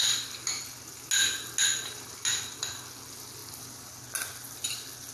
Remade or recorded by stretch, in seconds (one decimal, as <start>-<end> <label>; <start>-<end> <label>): 0.0-1.7 recorded; 1.7-2.9 remade; 2.9-3.4 recorded; 3.4-3.9 remade; 3.9-5.1 recorded